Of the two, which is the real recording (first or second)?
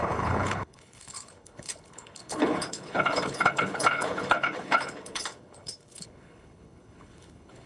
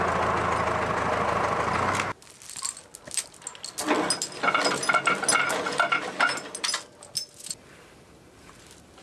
second